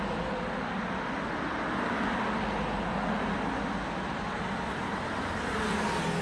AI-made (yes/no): no